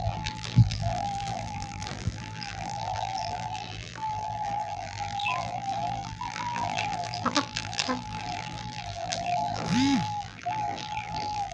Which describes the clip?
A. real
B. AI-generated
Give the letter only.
B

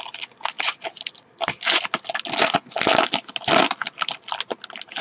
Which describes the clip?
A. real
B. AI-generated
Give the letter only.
A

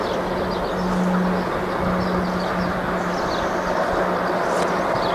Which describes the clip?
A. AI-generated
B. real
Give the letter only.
B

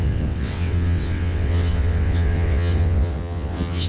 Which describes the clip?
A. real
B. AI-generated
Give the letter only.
B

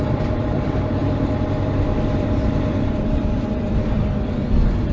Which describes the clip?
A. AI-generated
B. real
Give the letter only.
A